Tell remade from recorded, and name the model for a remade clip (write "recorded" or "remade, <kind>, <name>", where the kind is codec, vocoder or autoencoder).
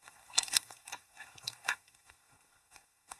remade, codec, SNAC